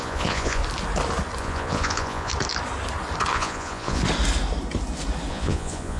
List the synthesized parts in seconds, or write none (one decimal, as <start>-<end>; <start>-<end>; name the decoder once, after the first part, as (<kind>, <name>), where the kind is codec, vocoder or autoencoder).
0.0-0.6 (vocoder, Vocos); 1.4-2.3; 3.3-4.0; 5.3-6.0